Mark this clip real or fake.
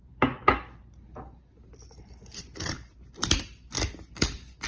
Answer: real